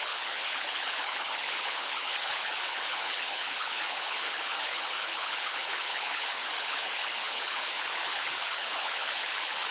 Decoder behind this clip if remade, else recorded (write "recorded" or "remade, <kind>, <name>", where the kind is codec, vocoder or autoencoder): remade, codec, HILCodec